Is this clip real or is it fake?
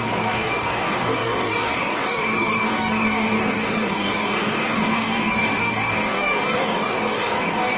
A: fake